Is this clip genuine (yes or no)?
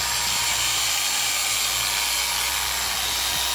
yes